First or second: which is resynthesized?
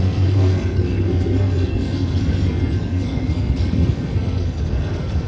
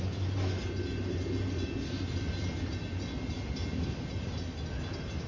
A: first